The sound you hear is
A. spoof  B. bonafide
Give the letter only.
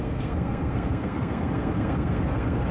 A